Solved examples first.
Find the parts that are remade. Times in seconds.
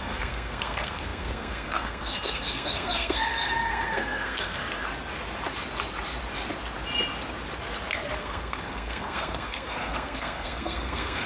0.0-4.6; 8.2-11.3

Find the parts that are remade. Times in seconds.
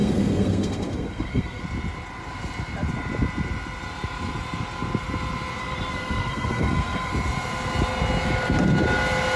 0.0-1.6; 5.6-7.1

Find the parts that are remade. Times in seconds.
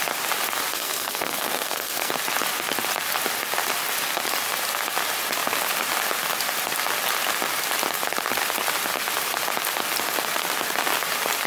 0.7-2.1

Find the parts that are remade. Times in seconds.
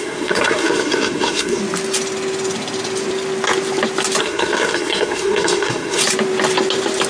0.0-1.6; 4.2-6.0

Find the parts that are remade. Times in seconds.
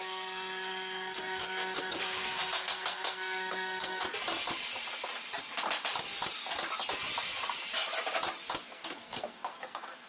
0.0-4.0; 8.6-10.1